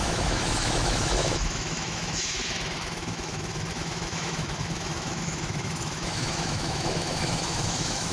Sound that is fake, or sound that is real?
fake